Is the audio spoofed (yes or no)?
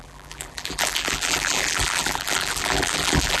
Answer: yes